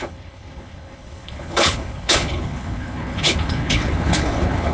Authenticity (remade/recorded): remade